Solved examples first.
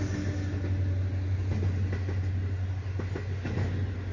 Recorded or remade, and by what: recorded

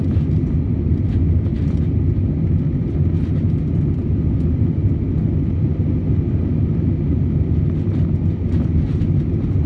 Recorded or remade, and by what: recorded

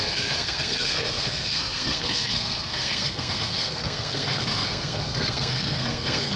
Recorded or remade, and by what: remade, codec, SNAC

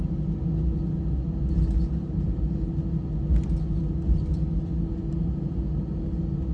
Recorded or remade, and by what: recorded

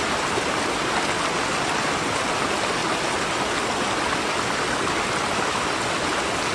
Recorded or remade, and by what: recorded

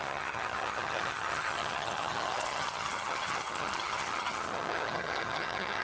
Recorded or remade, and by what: remade, vocoder, HiFi-GAN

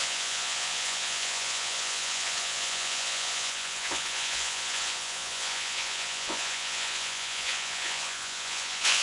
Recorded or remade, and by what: remade, vocoder, Vocos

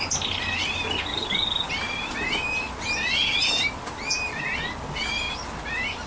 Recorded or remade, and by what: recorded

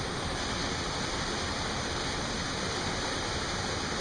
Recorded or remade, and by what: recorded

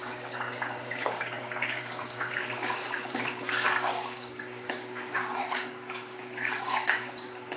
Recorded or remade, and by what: remade, codec, DAC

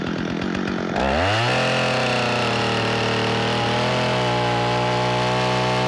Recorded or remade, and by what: recorded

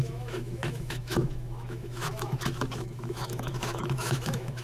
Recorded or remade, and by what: remade, autoencoder, DAC-VAE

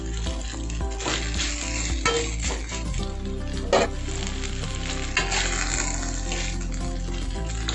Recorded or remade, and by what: recorded